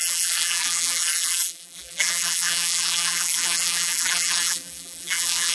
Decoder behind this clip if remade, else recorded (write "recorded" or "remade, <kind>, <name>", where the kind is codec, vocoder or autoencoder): remade, vocoder, BigVGAN v2